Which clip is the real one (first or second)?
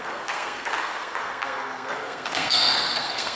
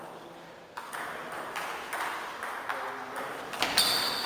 second